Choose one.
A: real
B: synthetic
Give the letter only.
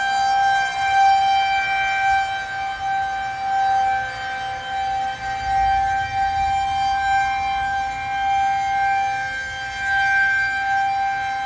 A